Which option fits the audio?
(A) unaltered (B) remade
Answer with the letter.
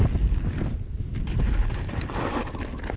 A